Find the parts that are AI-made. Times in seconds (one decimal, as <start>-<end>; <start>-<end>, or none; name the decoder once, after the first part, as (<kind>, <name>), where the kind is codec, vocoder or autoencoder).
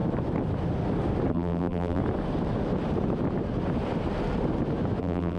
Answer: 1.3-2.0 (vocoder, BigVGAN v2); 5.0-5.4